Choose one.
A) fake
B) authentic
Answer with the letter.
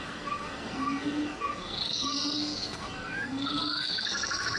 A